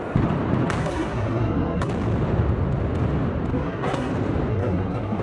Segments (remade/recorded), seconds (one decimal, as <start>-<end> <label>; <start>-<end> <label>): 0.0-0.8 recorded; 0.8-1.9 remade; 1.9-3.5 recorded; 3.5-4.1 remade; 4.1-4.5 recorded; 4.5-5.2 remade